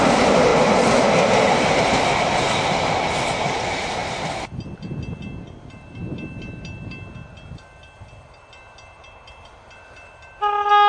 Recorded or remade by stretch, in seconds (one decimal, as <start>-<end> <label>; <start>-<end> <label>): 0.0-10.9 recorded